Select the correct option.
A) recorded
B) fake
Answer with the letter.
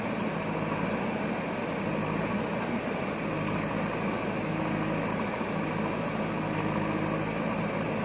A